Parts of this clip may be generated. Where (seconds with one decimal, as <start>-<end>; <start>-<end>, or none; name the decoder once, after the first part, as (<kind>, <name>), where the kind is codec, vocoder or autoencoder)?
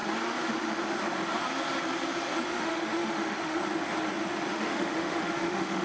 2.5-3.6 (autoencoder, DAC-VAE); 4.5-5.8